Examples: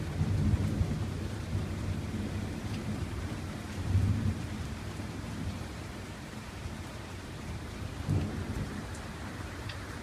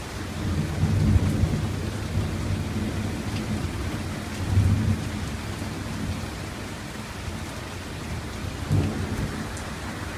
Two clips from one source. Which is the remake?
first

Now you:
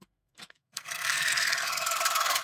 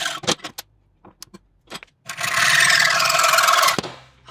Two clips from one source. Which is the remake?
first